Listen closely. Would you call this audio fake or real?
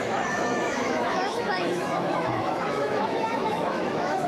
fake